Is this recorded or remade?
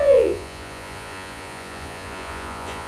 remade